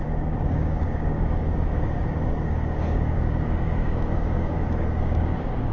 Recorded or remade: remade